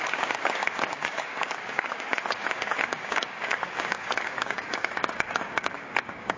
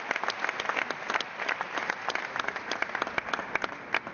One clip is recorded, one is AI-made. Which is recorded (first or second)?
second